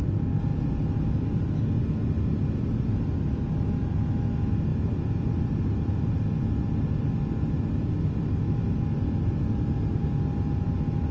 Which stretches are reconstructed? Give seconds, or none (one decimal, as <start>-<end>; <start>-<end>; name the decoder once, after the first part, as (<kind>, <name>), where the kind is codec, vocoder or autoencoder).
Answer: none